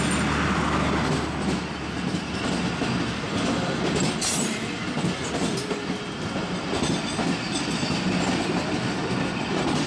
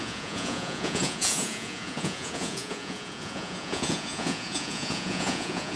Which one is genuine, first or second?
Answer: first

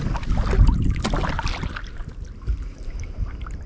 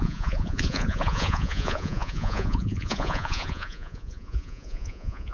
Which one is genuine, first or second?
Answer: first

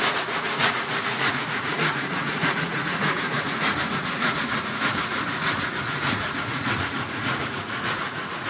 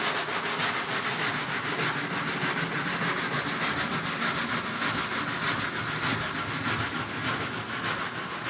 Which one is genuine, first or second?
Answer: second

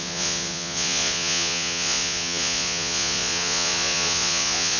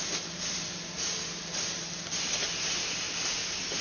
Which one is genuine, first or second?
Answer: second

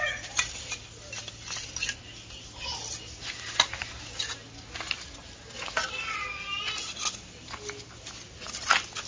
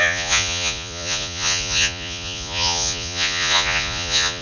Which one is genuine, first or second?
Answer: first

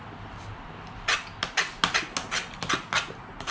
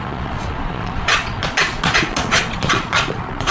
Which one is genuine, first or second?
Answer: first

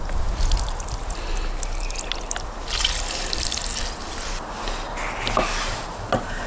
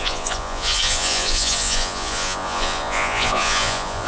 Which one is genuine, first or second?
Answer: first